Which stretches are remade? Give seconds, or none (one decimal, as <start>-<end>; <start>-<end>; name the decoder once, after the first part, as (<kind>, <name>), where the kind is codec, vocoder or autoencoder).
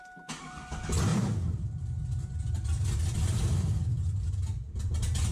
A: 1.1-4.3 (vocoder, BigVGAN v2)